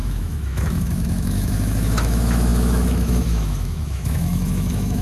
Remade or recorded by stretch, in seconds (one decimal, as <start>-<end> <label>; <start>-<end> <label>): 0.0-5.0 remade